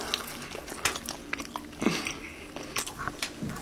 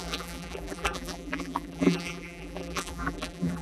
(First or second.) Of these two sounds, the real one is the first